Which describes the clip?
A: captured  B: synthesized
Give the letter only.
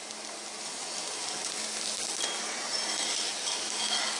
A